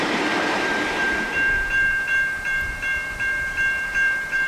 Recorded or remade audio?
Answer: remade